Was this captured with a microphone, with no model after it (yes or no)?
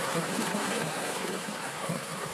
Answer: no